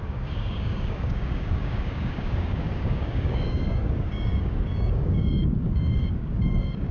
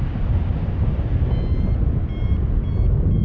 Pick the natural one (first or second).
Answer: second